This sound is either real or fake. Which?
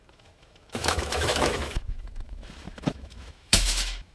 fake